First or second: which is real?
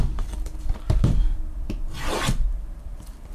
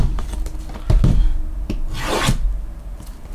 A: second